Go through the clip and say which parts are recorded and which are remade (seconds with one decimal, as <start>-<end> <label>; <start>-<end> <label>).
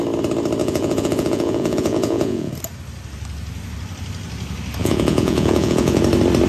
0.0-0.6 recorded; 0.6-2.5 remade; 2.5-4.8 recorded; 4.8-6.0 remade; 6.0-6.5 recorded